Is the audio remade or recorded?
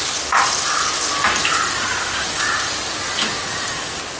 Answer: recorded